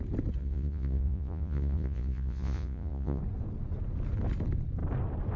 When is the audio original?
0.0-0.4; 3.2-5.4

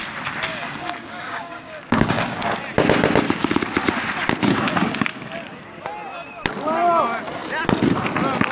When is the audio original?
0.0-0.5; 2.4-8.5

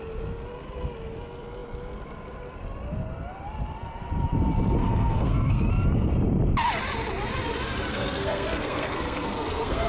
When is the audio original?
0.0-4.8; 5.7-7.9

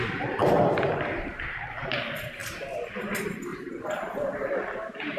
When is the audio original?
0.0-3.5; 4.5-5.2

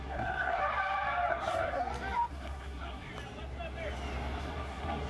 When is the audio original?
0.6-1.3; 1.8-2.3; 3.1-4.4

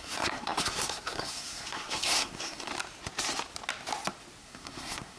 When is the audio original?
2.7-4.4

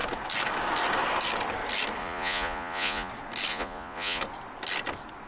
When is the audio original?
0.0-2.0; 3.1-3.5; 4.2-5.3

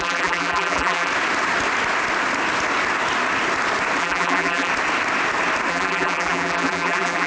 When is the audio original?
1.1-4.0; 4.7-5.7